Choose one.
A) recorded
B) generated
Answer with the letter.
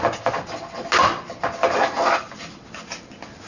A